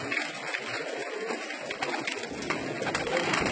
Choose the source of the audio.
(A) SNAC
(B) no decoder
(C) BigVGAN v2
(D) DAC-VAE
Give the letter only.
B